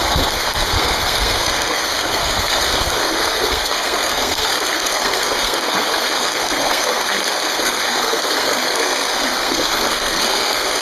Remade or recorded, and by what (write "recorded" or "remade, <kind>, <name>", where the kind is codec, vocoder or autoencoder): remade, codec, SNAC